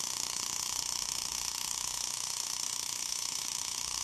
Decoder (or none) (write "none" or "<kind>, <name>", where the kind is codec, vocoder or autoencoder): autoencoder, DAC-VAE